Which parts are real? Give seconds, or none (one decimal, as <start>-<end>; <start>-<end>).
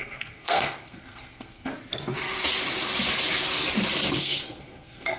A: 1.7-4.2